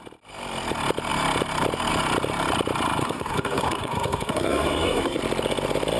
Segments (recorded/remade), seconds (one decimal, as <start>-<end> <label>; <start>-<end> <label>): 0.0-3.0 recorded; 3.0-5.2 remade; 5.2-6.0 recorded